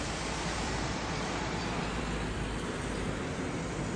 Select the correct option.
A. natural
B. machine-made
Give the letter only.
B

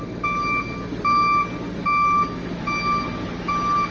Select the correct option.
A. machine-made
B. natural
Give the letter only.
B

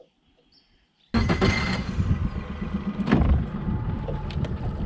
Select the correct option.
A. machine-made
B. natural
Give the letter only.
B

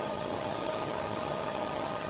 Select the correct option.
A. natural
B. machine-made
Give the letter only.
B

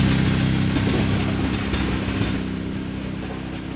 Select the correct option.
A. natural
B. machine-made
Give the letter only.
A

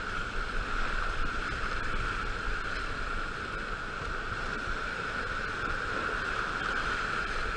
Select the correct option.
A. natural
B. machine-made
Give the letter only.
A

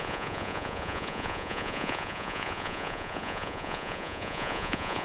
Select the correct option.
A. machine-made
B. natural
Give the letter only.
A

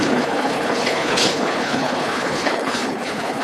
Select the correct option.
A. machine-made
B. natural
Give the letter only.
A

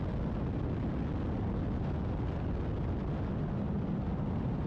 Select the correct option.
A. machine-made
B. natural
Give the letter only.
B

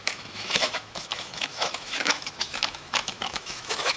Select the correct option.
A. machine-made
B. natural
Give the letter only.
A